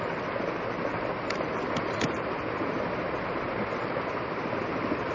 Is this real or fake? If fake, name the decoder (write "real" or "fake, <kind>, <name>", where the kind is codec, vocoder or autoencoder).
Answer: real